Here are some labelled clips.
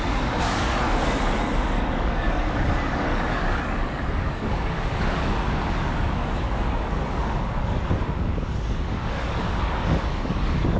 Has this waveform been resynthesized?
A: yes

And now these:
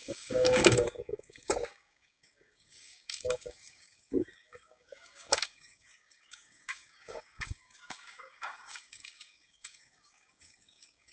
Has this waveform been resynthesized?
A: yes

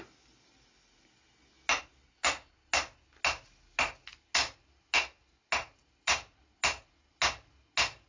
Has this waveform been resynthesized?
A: no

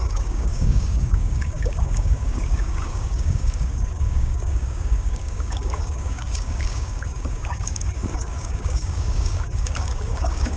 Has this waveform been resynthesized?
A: yes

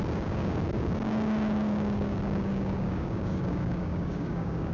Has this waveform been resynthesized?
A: yes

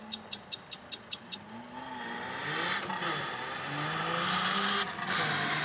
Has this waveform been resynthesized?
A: no